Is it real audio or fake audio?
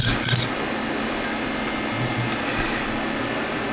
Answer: real